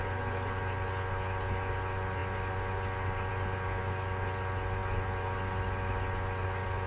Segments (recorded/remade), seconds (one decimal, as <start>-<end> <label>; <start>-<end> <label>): 0.0-6.9 recorded